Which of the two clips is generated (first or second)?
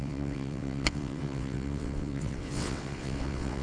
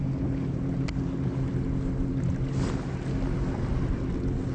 first